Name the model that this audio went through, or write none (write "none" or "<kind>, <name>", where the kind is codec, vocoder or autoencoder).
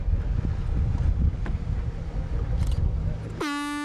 none